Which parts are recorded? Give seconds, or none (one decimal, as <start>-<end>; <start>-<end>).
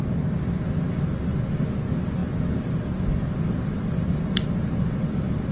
0.0-2.2; 3.6-5.0